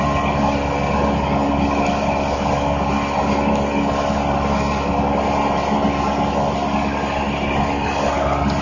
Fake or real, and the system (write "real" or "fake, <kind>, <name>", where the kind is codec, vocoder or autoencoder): real